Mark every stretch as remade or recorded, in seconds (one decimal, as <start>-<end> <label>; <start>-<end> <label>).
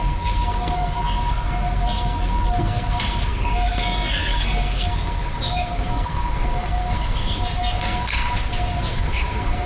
0.0-9.7 remade